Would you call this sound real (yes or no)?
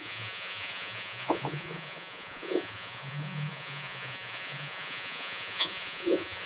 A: no